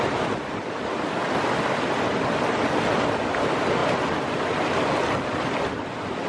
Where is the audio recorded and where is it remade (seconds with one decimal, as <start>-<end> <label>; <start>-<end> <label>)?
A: 0.0-6.3 recorded